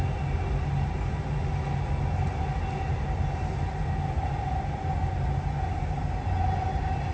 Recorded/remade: recorded